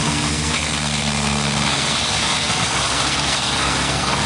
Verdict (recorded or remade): remade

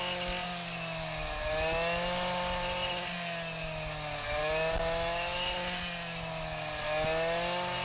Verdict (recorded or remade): recorded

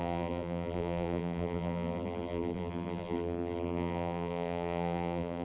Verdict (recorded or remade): remade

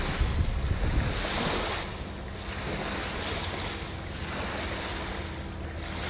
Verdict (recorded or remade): recorded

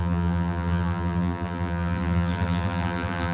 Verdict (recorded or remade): remade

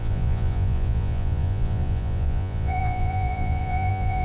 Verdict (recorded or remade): remade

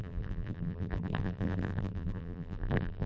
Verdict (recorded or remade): remade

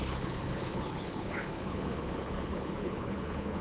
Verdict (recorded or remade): remade